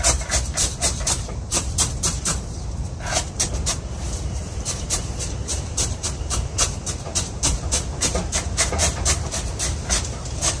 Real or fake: fake